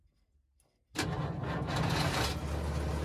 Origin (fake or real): real